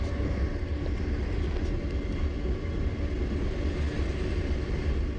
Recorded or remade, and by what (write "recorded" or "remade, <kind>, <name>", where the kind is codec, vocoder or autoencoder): recorded